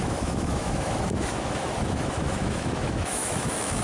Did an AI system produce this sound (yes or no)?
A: yes